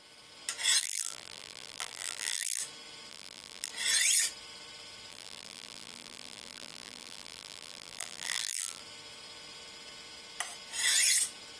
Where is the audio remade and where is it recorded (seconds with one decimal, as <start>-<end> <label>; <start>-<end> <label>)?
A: 0.0-0.8 recorded; 0.8-2.6 remade; 2.6-3.1 recorded; 3.1-3.7 remade; 3.7-5.1 recorded; 5.1-8.8 remade; 8.8-11.6 recorded